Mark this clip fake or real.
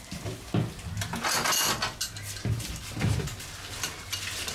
real